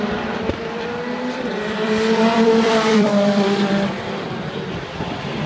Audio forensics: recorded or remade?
remade